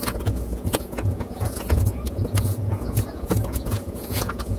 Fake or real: fake